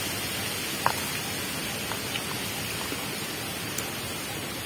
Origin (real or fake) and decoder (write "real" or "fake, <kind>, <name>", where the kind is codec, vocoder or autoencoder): real